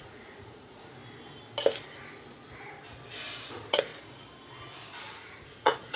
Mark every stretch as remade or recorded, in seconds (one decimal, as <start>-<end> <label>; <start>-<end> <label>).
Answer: 0.0-1.0 remade; 1.0-3.5 recorded; 3.5-3.9 remade; 3.9-5.0 recorded; 5.0-6.0 remade